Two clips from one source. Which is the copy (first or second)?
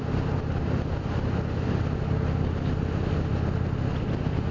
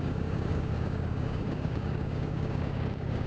second